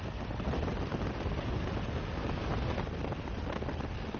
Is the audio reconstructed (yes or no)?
no